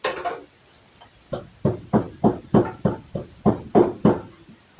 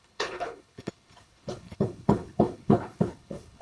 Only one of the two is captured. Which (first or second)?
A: first